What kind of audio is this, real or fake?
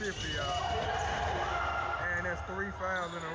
real